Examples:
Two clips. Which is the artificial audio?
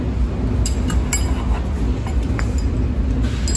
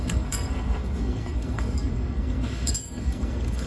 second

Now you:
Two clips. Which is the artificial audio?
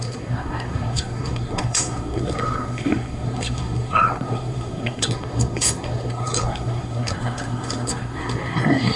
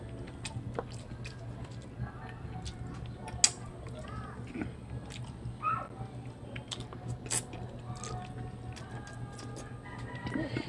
first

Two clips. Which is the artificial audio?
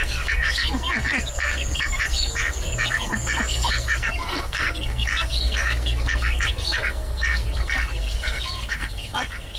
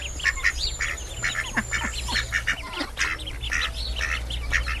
first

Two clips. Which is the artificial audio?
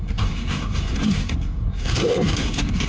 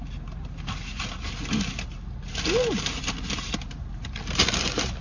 first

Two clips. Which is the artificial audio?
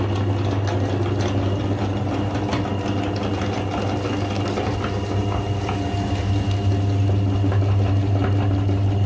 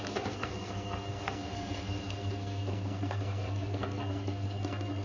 second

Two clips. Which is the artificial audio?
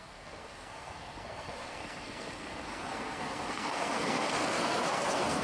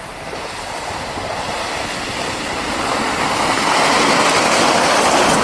first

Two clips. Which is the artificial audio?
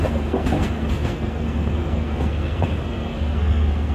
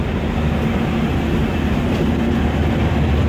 first